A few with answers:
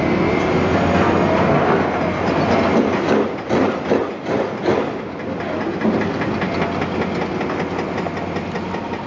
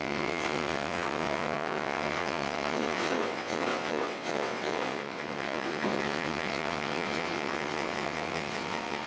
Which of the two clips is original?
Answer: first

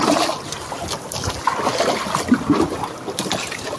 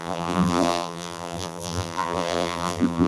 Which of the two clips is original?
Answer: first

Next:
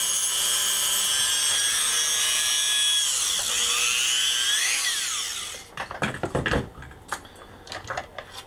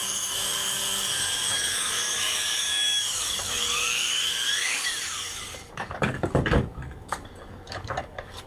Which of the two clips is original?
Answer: first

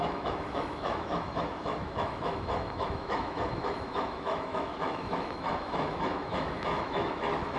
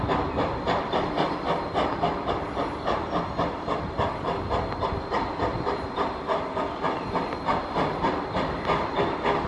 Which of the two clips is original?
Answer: second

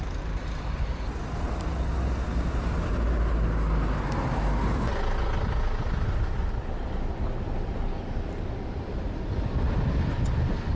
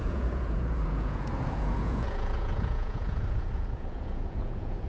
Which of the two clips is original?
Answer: first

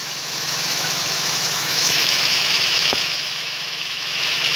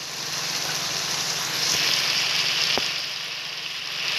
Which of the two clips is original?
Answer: second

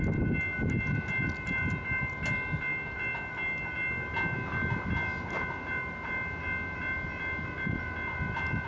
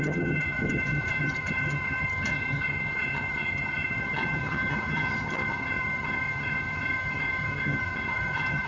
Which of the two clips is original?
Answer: first